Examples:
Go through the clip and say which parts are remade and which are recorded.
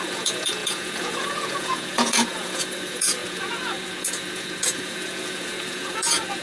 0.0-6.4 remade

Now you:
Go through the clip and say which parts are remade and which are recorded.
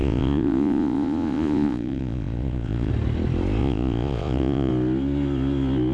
0.0-2.9 remade; 2.9-3.6 recorded; 3.6-4.7 remade; 4.7-5.9 recorded